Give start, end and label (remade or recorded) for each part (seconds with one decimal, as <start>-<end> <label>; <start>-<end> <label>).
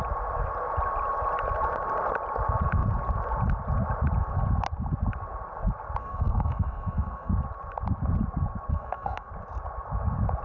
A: 0.0-6.0 recorded; 6.0-7.3 remade; 7.3-8.7 recorded; 8.7-9.3 remade; 9.3-10.4 recorded